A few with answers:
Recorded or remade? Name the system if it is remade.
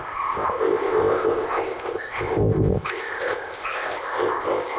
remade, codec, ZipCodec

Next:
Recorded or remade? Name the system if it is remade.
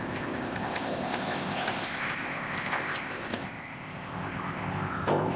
remade, codec, ZipCodec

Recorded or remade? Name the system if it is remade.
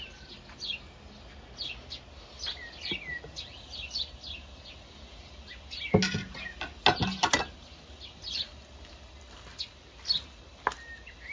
recorded